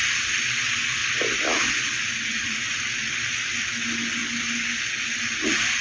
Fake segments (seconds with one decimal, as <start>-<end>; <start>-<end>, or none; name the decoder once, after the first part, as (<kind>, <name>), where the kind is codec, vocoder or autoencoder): none

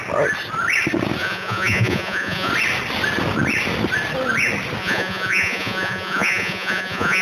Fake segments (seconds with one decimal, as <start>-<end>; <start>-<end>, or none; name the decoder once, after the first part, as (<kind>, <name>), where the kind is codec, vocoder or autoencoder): 1.2-2.5 (vocoder, Vocos); 4.8-7.2

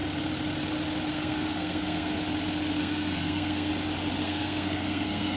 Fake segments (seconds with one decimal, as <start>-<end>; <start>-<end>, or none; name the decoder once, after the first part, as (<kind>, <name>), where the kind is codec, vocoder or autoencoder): 1.1-2.2 (codec, SNAC); 2.8-3.7; 4.2-5.4

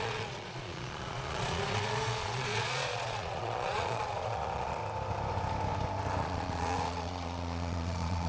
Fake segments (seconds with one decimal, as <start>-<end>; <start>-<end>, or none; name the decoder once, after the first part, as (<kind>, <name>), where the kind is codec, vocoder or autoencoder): 0.0-4.8 (vocoder, Vocos); 6.2-8.3

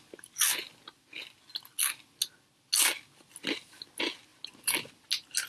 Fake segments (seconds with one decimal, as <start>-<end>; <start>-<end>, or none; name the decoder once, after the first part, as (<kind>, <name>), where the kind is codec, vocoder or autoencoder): none